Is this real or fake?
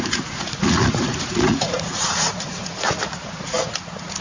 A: fake